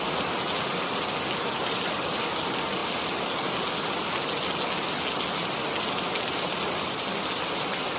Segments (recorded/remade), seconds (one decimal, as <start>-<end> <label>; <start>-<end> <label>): 0.0-8.0 recorded